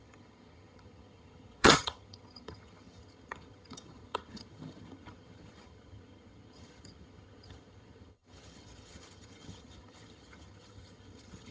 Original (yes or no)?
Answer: no